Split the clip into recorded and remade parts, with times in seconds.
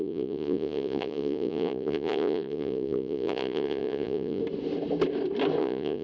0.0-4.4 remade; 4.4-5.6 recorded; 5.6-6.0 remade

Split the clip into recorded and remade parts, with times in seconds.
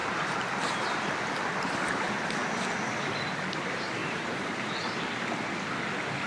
0.0-1.1 remade; 1.1-4.0 recorded; 4.0-5.0 remade; 5.0-6.3 recorded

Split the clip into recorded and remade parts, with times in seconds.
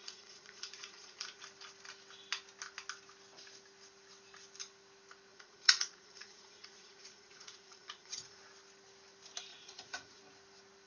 0.0-1.4 remade; 1.4-5.3 recorded; 5.3-8.4 remade; 8.4-9.5 recorded; 9.5-10.2 remade; 10.2-10.9 recorded